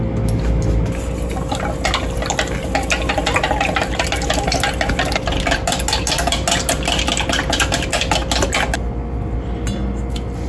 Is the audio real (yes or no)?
yes